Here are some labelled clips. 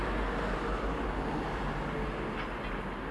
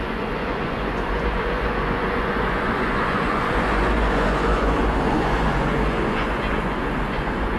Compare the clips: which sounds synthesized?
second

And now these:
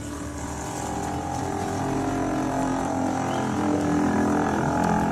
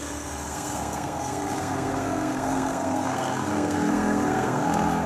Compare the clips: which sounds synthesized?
second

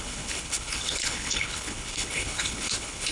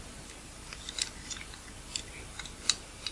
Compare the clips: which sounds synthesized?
first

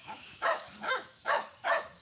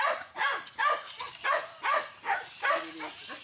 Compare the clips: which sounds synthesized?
first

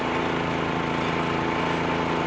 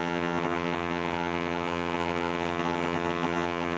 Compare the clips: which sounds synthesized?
second